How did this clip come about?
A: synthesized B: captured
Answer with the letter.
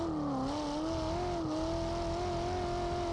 B